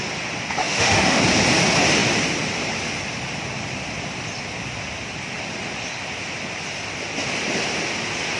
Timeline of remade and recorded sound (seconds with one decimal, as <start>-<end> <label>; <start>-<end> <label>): 0.0-0.6 recorded; 0.6-1.2 remade; 1.2-8.4 recorded

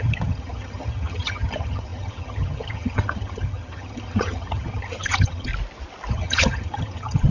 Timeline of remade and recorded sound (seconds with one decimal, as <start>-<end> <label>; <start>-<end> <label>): 0.0-5.5 remade; 5.5-6.1 recorded; 6.1-7.3 remade

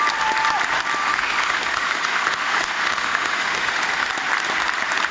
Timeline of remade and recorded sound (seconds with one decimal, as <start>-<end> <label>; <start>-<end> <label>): 0.0-1.0 recorded; 1.0-4.1 remade; 4.1-5.1 recorded

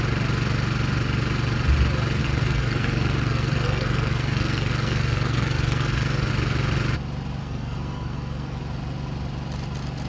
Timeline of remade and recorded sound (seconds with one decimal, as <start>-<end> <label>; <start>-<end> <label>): 0.0-2.2 recorded; 2.2-6.3 remade; 6.3-7.4 recorded; 7.4-8.6 remade; 8.6-10.1 recorded